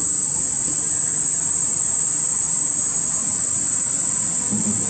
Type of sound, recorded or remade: recorded